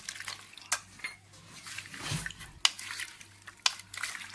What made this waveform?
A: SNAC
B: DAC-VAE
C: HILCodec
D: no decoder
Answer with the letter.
D